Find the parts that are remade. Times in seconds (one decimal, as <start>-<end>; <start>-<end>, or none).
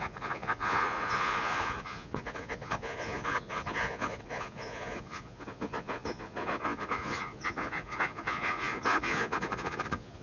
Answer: 0.0-10.2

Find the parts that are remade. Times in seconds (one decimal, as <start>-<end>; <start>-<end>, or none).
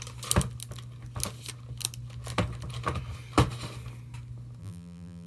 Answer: 4.6-5.3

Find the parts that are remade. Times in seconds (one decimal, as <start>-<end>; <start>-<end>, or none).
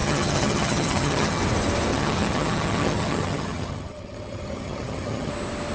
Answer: 0.0-1.4; 1.9-5.3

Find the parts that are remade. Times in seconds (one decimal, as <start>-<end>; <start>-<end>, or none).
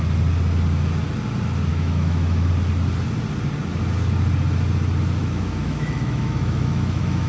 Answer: 1.7-2.5; 5.2-7.3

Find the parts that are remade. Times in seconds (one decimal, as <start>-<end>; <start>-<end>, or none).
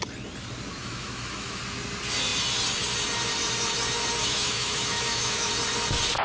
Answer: 0.8-1.6; 4.2-5.5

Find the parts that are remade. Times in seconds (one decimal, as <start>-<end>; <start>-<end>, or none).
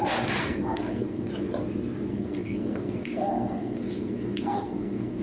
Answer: 0.4-1.3; 2.1-5.2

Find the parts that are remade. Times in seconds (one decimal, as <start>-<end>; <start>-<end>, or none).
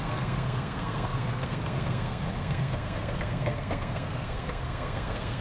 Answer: 0.0-5.4